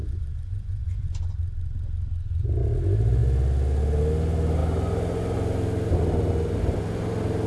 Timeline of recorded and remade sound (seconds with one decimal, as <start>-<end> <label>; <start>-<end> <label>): 0.0-1.1 remade; 1.1-7.5 recorded